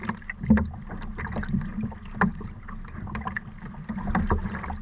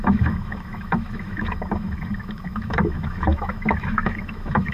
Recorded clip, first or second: first